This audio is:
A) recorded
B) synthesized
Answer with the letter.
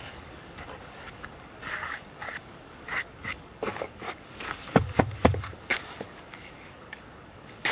B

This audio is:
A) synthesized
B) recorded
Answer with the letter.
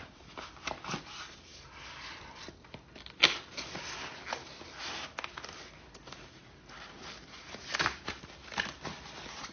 B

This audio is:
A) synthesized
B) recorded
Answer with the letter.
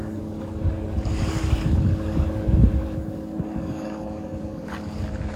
A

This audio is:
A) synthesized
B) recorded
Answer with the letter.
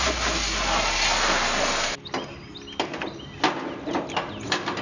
B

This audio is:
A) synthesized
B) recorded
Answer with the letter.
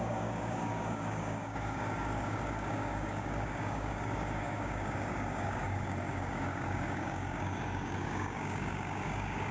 A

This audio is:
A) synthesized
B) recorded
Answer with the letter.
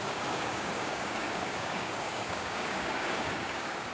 A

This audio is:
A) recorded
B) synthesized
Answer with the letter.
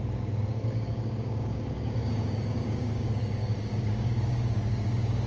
B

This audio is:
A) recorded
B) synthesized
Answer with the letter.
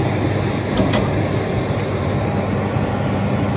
A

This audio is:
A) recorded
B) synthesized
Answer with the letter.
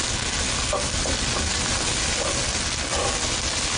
A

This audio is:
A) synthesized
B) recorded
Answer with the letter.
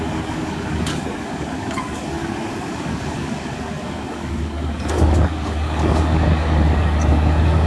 A